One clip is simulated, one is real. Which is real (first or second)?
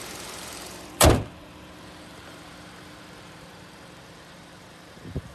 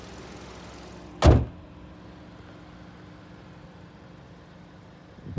second